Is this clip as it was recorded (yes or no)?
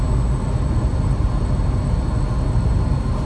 yes